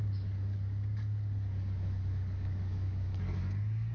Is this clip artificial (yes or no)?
yes